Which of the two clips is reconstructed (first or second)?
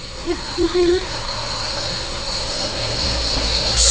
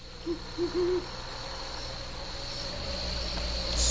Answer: first